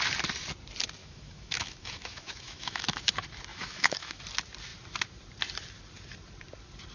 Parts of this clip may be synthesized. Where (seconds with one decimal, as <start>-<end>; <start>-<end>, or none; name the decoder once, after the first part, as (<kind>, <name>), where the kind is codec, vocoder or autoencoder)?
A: 1.0-3.1 (autoencoder, DAC-VAE); 3.5-4.2